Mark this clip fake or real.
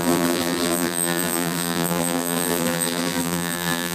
fake